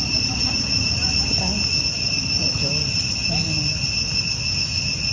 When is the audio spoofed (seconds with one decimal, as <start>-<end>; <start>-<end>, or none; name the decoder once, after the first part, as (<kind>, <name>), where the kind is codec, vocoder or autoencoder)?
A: 0.0-5.1 (vocoder, BigVGAN v2)